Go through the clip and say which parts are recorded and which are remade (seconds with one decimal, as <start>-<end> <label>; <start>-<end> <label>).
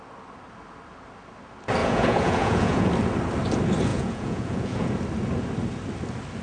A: 0.0-1.8 recorded; 1.8-2.9 remade; 2.9-3.9 recorded; 3.9-4.9 remade; 4.9-6.4 recorded